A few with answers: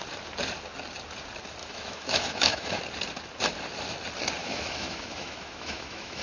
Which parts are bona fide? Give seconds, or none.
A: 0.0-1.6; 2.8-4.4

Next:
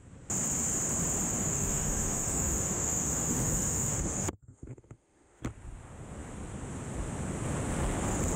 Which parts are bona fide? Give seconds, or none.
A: 0.0-1.4; 5.4-8.4

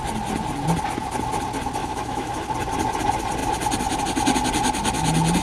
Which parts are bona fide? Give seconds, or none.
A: 0.0-1.8; 2.3-5.4